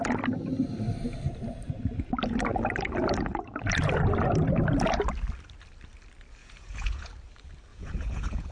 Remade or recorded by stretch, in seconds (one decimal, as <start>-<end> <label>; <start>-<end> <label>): 0.0-6.4 recorded; 6.4-7.1 remade; 7.1-7.7 recorded; 7.7-8.5 remade